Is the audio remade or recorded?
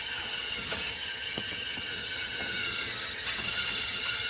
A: remade